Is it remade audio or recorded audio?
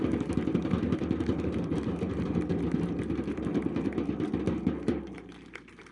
recorded